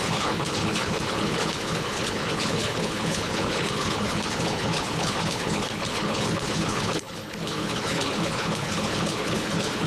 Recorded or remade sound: remade